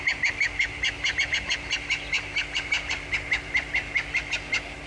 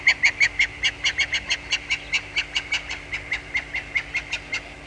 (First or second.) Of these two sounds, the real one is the second